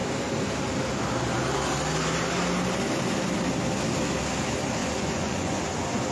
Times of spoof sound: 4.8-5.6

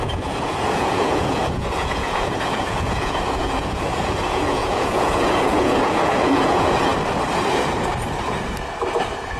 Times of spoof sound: 0.0-6.9; 7.5-7.9

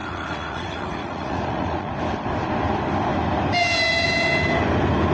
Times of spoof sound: 0.0-1.9

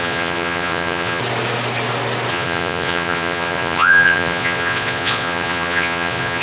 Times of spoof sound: 0.0-1.2; 2.3-6.4

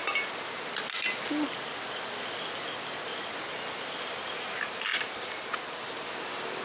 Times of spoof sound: none

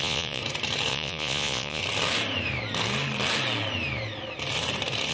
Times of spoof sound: 0.0-0.4; 0.9-1.8

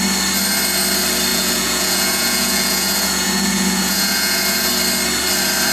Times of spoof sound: 1.3-4.7